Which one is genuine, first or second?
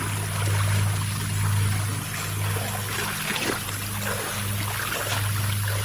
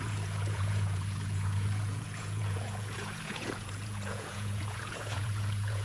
first